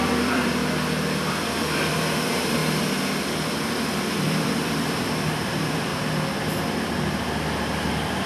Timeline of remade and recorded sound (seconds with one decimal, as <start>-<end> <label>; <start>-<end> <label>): 0.0-0.6 remade; 0.6-1.3 recorded; 1.3-2.6 remade; 2.6-3.4 recorded; 3.4-5.9 remade; 5.9-7.9 recorded; 7.9-8.3 remade